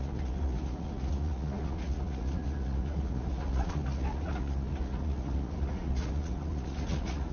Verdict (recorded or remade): remade